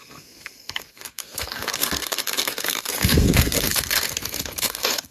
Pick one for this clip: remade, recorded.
remade